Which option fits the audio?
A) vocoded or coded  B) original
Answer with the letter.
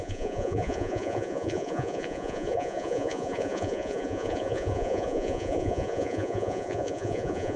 A